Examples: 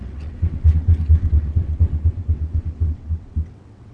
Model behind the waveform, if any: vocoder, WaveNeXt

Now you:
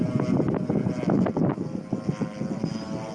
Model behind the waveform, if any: none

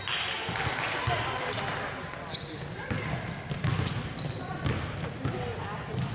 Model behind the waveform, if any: none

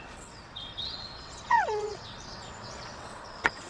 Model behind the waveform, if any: vocoder, WaveNeXt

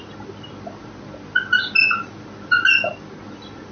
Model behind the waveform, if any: none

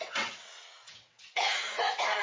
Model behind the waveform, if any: vocoder, WaveNeXt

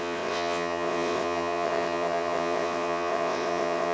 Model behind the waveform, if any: vocoder, WaveNeXt